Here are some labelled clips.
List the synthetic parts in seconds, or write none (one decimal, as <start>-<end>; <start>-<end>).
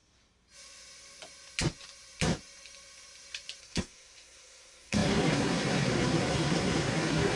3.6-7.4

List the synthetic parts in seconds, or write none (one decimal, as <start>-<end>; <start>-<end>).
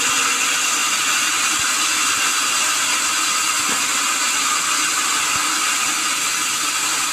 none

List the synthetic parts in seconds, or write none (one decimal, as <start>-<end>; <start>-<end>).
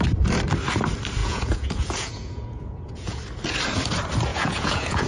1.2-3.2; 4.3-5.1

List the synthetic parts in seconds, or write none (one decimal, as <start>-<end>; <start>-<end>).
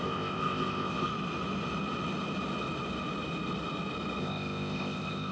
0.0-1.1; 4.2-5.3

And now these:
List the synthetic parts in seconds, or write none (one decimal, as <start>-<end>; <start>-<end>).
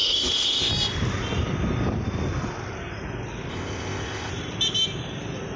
0.0-0.7; 3.5-4.3